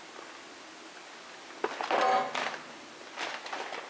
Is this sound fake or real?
real